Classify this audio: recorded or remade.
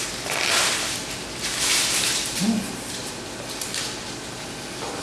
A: recorded